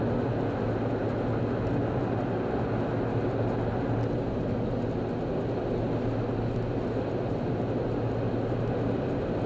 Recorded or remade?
recorded